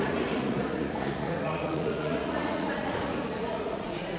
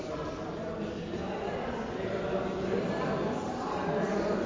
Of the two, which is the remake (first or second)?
first